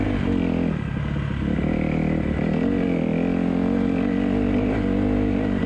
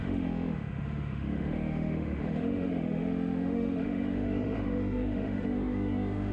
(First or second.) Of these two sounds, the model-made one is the second